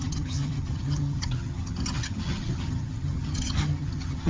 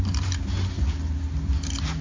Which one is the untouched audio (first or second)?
second